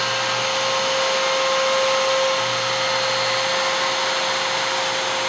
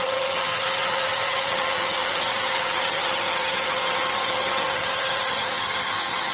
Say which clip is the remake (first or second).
second